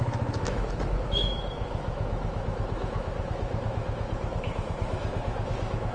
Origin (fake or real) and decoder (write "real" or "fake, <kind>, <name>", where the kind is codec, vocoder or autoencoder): fake, autoencoder, DAC-VAE